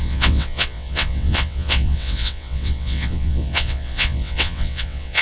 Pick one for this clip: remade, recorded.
remade